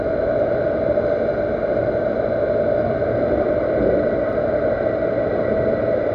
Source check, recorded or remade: recorded